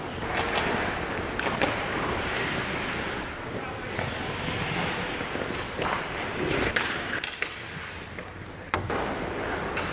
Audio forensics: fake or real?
real